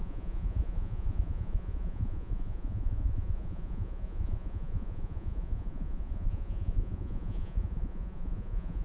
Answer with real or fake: fake